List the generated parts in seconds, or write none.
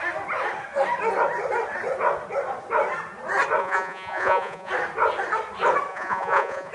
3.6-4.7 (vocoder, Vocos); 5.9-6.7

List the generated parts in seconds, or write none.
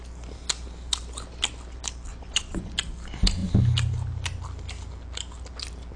2.1-2.7 (vocoder, Vocos)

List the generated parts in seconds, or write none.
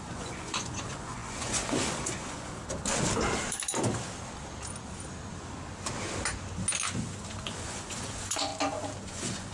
0.0-2.6 (vocoder, Vocos); 7.4-8.5; 9.1-9.5